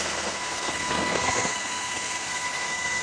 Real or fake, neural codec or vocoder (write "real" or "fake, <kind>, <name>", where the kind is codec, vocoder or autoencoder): fake, codec, SNAC